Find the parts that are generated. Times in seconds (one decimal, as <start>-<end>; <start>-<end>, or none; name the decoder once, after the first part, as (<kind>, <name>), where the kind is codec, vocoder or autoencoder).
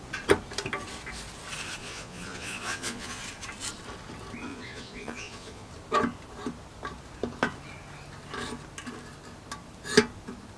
1.8-3.2 (vocoder, Vocos); 4.5-5.7